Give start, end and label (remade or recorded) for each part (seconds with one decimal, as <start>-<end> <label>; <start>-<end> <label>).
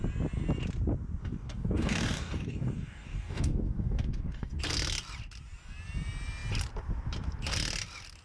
0.0-1.2 recorded; 1.2-4.6 remade; 4.6-8.2 recorded